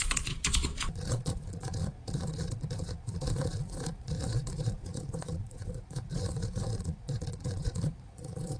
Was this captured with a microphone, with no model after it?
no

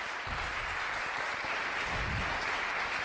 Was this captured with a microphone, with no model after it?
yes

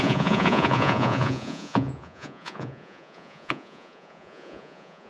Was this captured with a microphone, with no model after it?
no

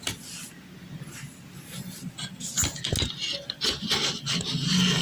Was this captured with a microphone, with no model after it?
yes